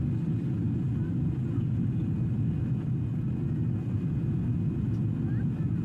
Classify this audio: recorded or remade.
recorded